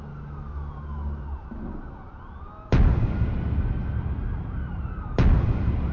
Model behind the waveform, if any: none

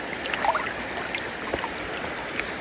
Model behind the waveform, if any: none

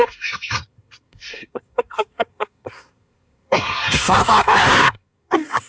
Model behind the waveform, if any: codec, SNAC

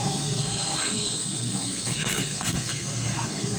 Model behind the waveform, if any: codec, SNAC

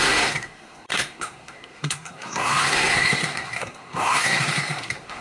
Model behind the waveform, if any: codec, SNAC